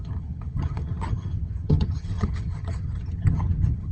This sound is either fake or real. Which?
fake